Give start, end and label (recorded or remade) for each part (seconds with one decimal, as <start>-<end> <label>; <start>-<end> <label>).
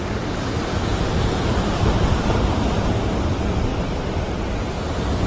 0.0-0.9 recorded; 0.9-3.2 remade; 3.2-3.7 recorded; 3.7-4.6 remade; 4.6-5.3 recorded